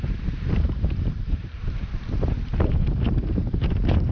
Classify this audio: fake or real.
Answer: fake